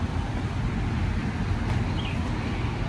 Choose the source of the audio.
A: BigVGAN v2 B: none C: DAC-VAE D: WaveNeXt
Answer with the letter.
B